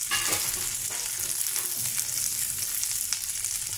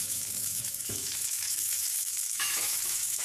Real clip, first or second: first